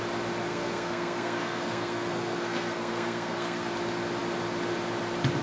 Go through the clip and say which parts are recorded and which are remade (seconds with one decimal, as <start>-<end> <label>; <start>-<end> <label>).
0.0-0.5 recorded; 0.5-3.7 remade; 3.7-5.4 recorded